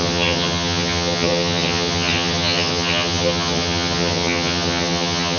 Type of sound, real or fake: fake